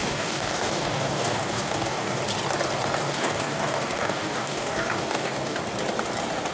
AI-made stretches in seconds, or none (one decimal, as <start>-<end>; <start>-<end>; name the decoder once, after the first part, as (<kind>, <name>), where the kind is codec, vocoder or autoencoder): 0.0-2.2 (codec, DAC); 3.0-5.6